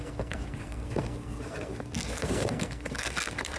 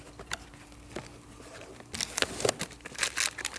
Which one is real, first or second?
second